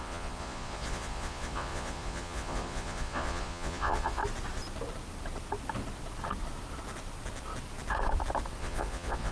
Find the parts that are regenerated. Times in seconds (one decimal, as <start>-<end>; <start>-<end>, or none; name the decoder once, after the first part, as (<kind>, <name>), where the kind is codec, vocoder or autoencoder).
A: 0.0-4.2 (vocoder, Vocos); 8.6-9.3